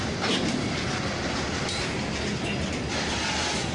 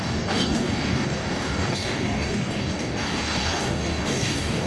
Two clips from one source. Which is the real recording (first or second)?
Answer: first